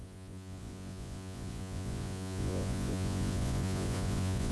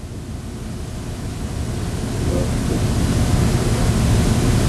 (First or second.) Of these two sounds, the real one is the second